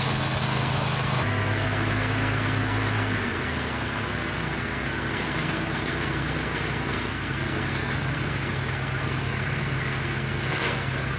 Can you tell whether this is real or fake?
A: fake